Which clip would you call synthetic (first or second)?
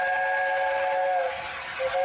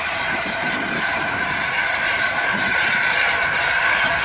second